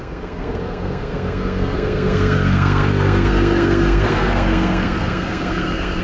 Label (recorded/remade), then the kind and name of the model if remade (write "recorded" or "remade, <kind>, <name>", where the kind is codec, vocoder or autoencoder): remade, codec, SNAC